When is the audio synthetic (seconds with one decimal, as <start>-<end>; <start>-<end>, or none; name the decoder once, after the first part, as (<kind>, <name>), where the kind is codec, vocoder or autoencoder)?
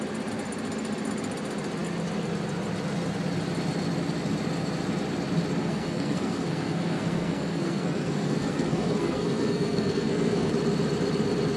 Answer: 5.6-10.5 (codec, SNAC)